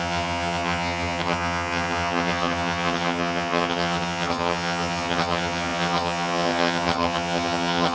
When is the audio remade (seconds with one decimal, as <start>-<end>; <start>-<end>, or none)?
0.0-7.9